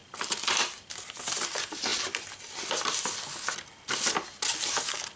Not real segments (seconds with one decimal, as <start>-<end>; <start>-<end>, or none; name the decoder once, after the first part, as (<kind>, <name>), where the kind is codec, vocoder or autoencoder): 0.0-0.8 (vocoder, BigVGAN v2)